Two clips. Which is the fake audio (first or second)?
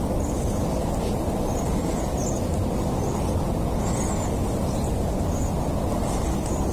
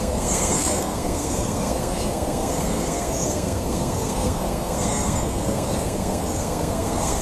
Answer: second